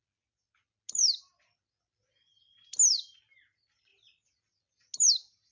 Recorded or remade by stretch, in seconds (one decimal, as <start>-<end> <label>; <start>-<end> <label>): 0.0-5.5 recorded